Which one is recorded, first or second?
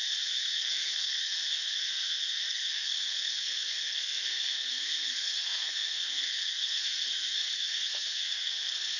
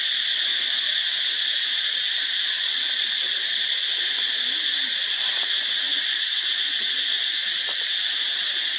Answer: second